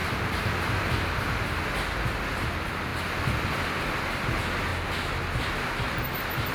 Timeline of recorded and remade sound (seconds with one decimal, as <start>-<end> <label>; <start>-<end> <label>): 0.0-1.3 remade; 1.3-6.5 recorded

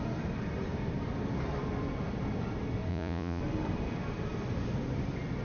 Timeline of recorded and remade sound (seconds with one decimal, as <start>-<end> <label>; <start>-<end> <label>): 0.0-2.9 recorded; 2.9-3.4 remade; 3.4-5.4 recorded